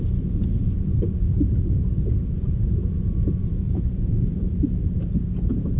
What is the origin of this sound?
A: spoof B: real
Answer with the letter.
A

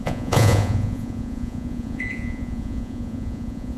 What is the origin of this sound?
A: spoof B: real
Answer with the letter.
A